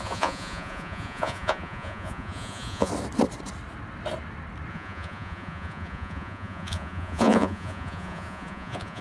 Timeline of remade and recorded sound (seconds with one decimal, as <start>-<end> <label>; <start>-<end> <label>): 0.0-2.9 remade; 2.9-4.7 recorded; 4.7-9.0 remade